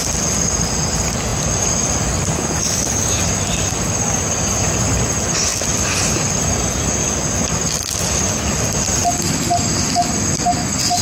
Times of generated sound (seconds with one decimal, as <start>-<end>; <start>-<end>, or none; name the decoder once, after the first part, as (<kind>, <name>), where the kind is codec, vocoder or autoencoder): 2.6-3.2 (codec, DAC)